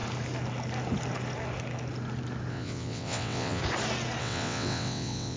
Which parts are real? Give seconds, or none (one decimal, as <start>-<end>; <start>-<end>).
0.0-2.5; 3.6-4.2